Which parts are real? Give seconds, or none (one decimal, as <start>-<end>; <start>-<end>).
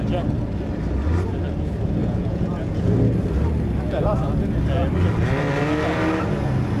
0.0-2.0; 2.9-6.8